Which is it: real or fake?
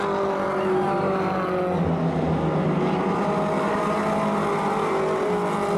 real